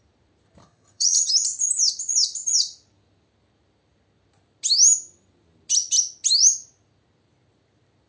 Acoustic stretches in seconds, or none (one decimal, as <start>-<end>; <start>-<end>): 0.0-0.6; 1.3-8.1